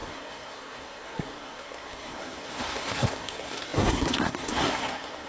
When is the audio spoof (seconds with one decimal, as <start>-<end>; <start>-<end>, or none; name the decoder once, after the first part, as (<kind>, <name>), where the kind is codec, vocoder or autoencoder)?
0.0-5.3 (codec, SNAC)